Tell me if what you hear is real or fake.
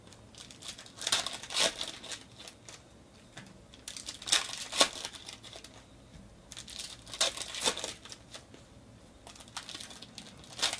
real